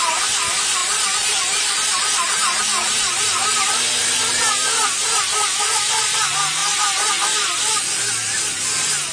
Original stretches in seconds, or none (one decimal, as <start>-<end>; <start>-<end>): 0.0-0.8; 3.2-6.6; 7.1-9.1